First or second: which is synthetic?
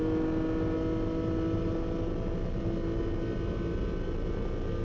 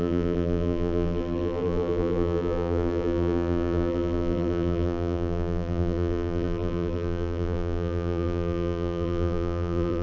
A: second